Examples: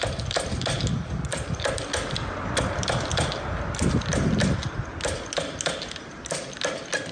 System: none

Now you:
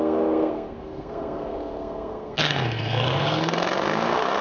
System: codec, SNAC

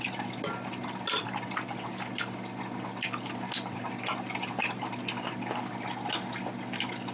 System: none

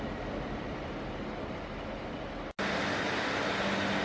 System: none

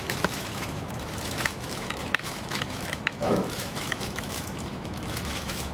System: autoencoder, DAC-VAE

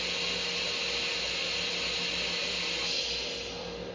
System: none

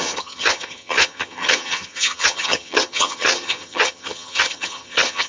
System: vocoder, HiFi-GAN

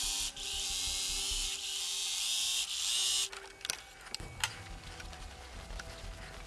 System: none